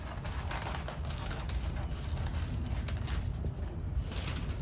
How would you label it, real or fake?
real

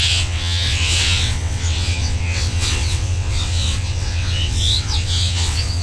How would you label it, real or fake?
fake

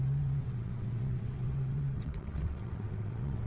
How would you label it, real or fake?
fake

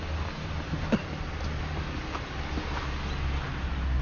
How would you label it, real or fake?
real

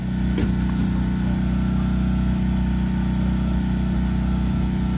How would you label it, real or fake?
real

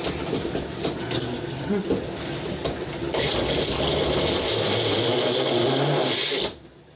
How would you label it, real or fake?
real